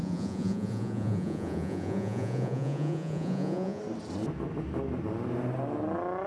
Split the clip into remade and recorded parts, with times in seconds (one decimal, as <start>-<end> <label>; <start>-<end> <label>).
0.0-3.8 remade; 3.8-6.3 recorded